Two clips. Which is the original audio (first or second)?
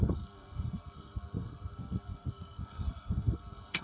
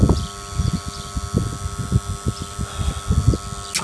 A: second